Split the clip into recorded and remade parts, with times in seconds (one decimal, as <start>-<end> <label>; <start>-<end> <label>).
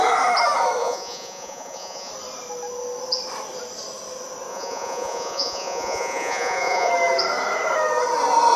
0.0-0.8 recorded; 0.8-2.1 remade; 2.1-4.5 recorded; 4.5-6.9 remade; 6.9-8.6 recorded